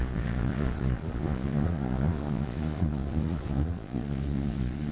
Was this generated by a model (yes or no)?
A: yes